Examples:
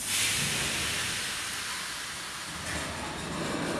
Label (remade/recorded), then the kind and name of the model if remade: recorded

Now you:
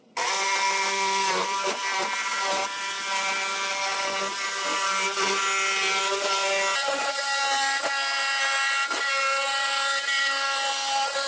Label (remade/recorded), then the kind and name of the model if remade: recorded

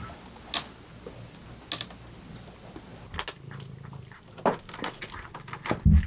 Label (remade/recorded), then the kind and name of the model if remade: recorded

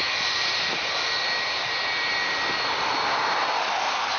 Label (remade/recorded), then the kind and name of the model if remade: recorded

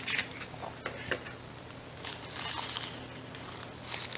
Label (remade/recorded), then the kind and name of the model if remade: recorded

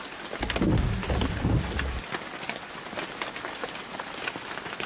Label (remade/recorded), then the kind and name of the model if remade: recorded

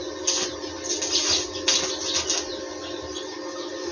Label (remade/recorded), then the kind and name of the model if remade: recorded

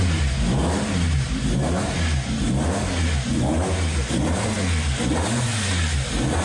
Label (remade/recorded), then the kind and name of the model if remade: recorded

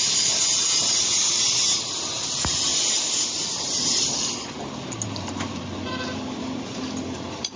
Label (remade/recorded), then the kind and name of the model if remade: recorded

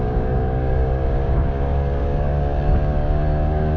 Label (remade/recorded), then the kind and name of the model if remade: remade, codec, DAC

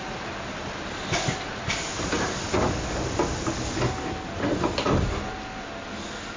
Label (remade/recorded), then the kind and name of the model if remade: recorded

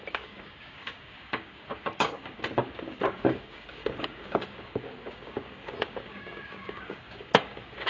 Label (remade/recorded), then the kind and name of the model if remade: remade, codec, DAC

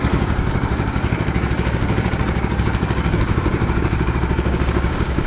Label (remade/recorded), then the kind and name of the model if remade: remade, codec, DAC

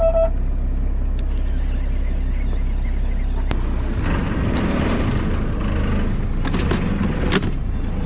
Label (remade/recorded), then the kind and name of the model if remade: recorded